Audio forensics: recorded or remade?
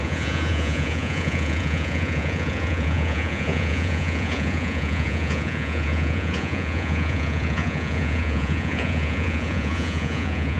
remade